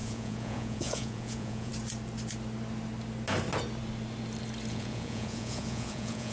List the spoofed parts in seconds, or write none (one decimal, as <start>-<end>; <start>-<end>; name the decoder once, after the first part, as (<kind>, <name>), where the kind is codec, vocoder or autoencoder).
0.0-1.7 (vocoder, Vocos); 4.7-6.3